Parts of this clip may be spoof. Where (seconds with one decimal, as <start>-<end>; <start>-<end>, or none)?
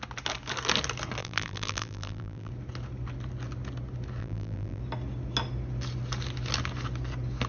1.2-2.5; 4.2-4.8